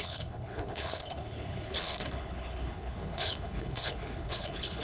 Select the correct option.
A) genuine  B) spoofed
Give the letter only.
B